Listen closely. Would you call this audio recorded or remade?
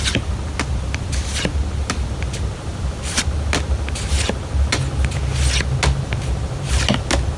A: recorded